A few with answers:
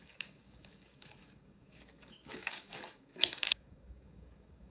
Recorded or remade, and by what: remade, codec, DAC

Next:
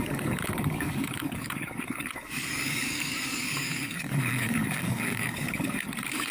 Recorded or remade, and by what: remade, codec, DAC